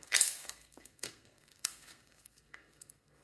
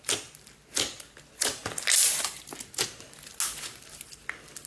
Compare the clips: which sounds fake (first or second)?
first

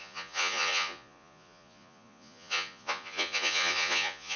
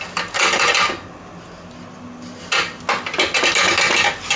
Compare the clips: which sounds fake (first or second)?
first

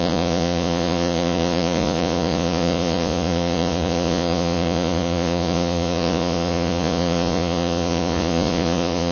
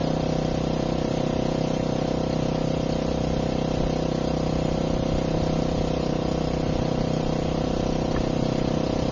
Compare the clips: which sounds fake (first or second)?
first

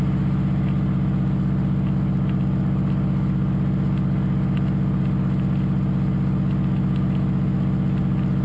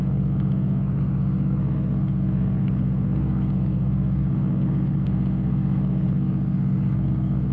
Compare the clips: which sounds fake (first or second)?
second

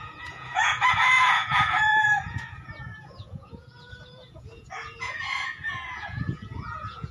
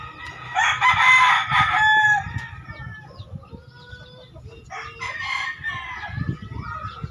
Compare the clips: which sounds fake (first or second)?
first